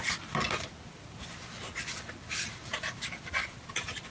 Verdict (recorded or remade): recorded